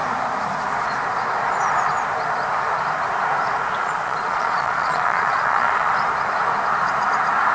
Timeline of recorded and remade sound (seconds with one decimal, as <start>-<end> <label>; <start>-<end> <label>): 0.0-3.8 recorded; 3.8-5.9 remade; 5.9-7.5 recorded

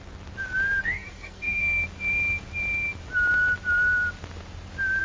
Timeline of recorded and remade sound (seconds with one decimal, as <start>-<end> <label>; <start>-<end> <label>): 0.0-0.8 recorded; 0.8-1.8 remade; 1.8-5.0 recorded

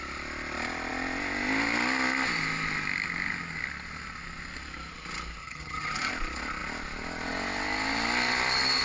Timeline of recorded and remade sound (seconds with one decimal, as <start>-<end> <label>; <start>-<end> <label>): 0.0-5.4 recorded; 5.4-6.1 remade; 6.1-8.8 recorded